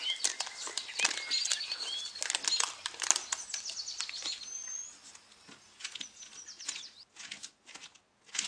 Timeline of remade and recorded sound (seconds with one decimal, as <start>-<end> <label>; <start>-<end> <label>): 0.0-8.5 recorded